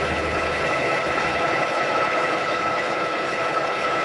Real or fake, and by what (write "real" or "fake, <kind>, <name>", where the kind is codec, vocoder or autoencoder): fake, codec, HILCodec